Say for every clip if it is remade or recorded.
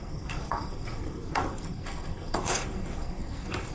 remade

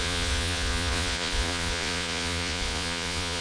remade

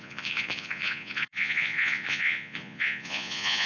remade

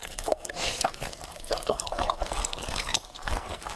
remade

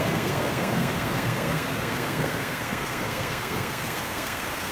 remade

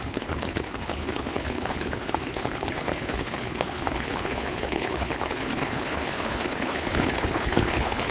remade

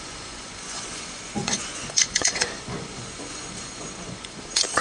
remade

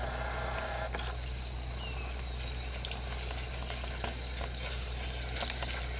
recorded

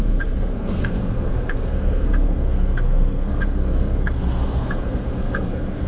remade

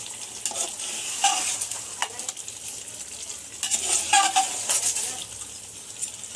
recorded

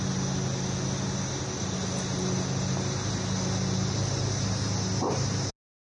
recorded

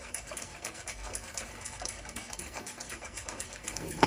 remade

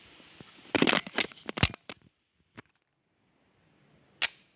recorded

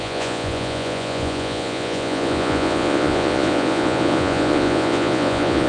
remade